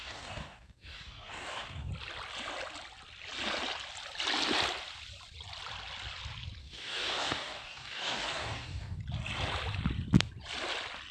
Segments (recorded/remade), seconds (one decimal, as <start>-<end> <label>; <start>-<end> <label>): 0.0-1.9 remade; 1.9-6.6 recorded; 6.6-9.0 remade; 9.0-11.1 recorded